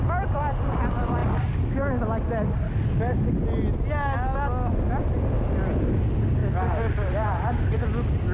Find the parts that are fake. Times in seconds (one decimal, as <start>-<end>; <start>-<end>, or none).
none